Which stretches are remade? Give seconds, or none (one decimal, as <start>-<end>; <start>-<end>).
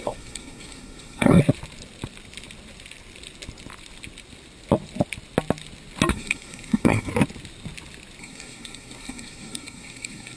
0.0-1.4; 6.1-7.1; 8.2-10.4